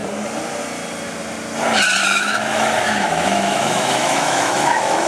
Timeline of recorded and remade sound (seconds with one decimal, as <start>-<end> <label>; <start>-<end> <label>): 0.0-2.0 recorded; 2.0-5.1 remade